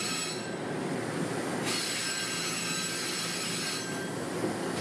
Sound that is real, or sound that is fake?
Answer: real